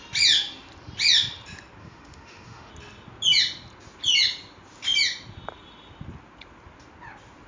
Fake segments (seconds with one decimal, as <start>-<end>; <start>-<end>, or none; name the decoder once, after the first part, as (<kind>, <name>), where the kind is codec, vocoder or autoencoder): 1.8-2.7 (autoencoder, DAC-VAE)